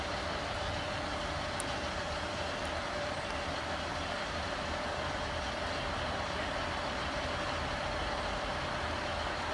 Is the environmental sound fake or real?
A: real